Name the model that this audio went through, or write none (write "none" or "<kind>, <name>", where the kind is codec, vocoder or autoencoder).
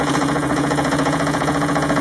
vocoder, Vocos